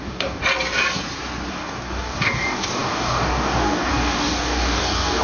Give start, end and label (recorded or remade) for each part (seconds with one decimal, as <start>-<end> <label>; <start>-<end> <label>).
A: 0.0-0.4 remade; 0.4-1.5 recorded; 1.5-5.2 remade